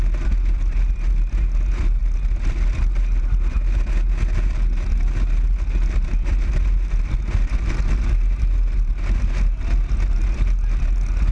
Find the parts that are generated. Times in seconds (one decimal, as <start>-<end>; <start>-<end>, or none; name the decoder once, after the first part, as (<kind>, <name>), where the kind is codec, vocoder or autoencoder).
none